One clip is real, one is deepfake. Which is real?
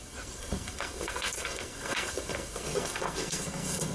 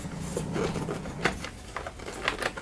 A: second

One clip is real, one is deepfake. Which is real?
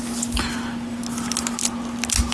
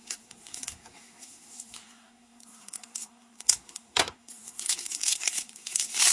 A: first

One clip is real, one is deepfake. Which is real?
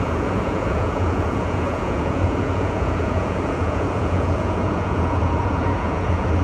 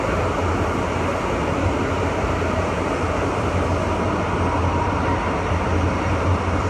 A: second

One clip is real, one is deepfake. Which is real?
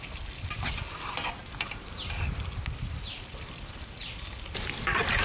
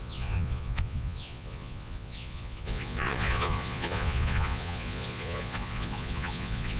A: first